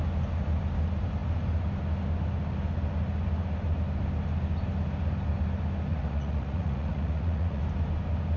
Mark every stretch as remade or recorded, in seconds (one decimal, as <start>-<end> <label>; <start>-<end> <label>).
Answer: 0.0-5.9 recorded; 5.9-7.6 remade; 7.6-8.4 recorded